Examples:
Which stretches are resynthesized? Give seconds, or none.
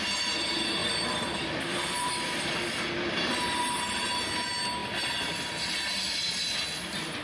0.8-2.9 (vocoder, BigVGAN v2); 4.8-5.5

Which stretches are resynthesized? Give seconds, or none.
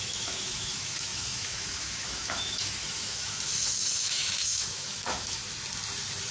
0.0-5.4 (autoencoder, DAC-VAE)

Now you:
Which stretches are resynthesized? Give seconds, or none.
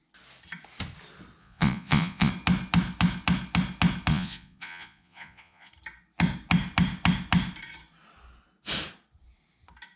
1.4-2.3 (vocoder, Vocos); 4.1-5.7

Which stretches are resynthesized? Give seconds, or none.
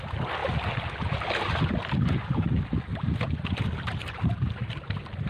2.9-3.6 (vocoder, BigVGAN v2); 4.0-5.3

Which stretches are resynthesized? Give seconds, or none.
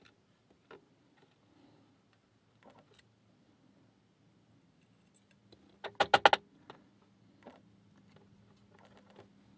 none